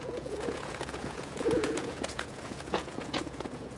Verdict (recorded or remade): remade